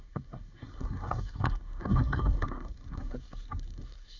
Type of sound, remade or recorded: remade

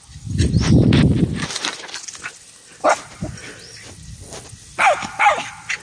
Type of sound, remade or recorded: recorded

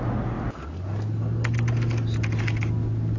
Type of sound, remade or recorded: recorded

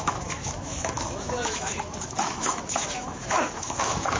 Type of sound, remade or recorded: remade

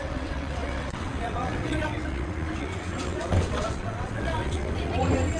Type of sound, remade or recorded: remade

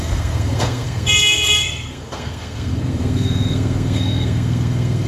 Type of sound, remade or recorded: remade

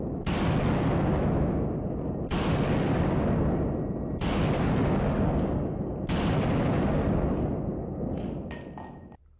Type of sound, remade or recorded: recorded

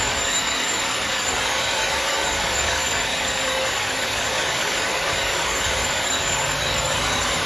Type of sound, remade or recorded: remade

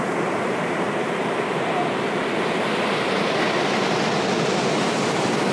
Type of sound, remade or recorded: recorded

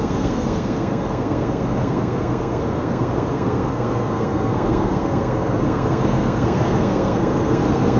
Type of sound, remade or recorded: remade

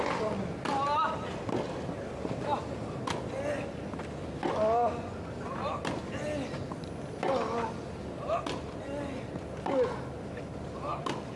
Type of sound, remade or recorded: recorded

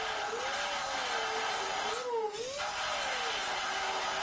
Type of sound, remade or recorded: recorded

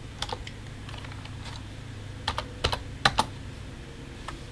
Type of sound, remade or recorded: recorded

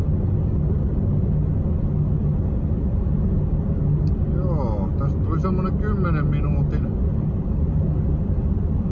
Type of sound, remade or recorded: recorded